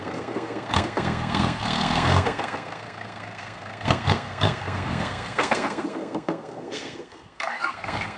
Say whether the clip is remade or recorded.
remade